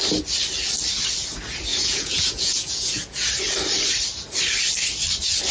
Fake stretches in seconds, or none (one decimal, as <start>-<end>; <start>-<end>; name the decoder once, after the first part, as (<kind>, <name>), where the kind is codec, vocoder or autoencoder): 1.7-3.3 (vocoder, Vocos)